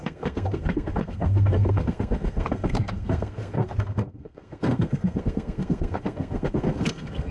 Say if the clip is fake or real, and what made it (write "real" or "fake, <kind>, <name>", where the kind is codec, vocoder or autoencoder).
fake, codec, SNAC